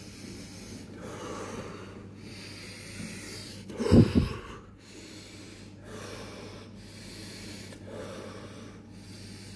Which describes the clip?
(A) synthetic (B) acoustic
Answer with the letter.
B